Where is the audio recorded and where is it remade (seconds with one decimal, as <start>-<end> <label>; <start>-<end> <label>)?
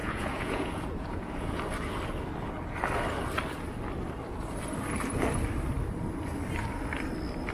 0.0-1.6 remade; 1.6-7.5 recorded